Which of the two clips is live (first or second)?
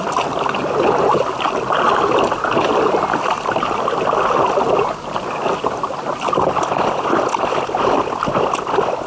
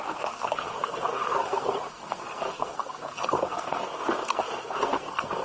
first